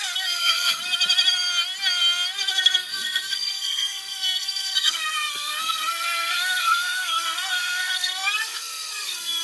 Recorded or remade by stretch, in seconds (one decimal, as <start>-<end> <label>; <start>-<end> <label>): 0.0-0.8 remade; 0.8-2.5 recorded; 2.5-9.4 remade